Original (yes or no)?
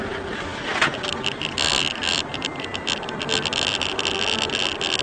yes